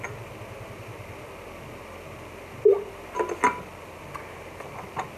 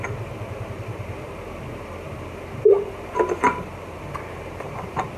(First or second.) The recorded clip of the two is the first